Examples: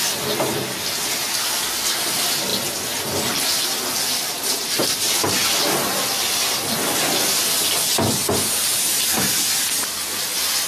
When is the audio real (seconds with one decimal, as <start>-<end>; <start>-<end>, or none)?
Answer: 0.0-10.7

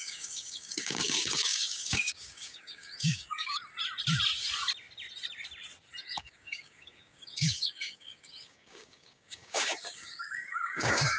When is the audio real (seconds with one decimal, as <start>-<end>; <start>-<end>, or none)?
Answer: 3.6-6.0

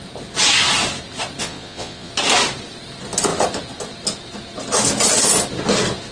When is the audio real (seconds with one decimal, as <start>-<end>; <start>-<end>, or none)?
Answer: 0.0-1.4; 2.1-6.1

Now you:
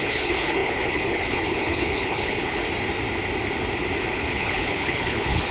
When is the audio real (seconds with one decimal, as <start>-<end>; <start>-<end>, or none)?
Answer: 2.6-4.1